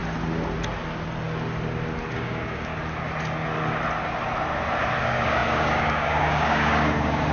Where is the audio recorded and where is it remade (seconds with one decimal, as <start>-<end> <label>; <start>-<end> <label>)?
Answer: 0.0-2.1 recorded; 2.1-2.7 remade; 2.7-5.0 recorded; 5.0-7.3 remade